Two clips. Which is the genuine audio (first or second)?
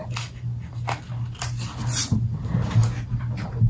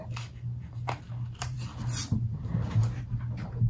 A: first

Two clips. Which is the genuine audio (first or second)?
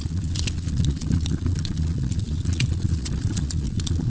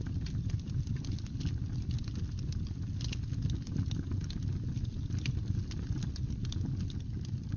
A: second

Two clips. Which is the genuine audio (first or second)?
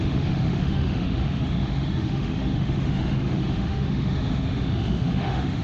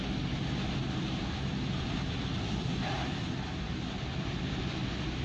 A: second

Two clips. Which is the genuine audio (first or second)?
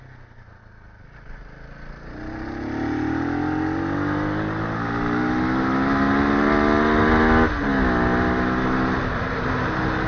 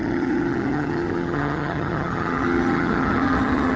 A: first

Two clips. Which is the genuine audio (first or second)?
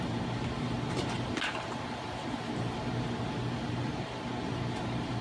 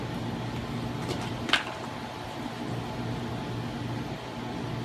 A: second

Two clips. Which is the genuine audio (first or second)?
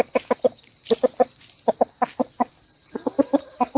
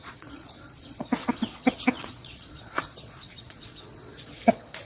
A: first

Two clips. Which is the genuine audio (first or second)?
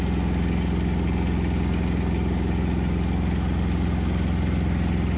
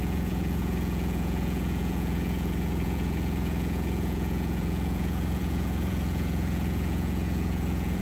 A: first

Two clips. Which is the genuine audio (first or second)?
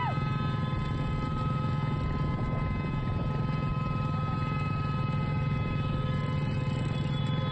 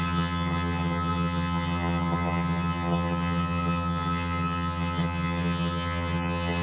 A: first